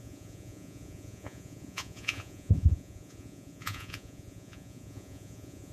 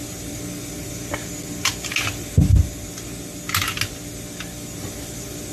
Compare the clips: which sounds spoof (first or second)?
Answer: first